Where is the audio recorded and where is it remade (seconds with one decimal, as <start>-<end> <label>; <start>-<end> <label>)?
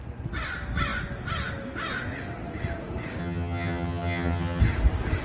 0.0-3.2 recorded; 3.2-4.6 remade; 4.6-5.2 recorded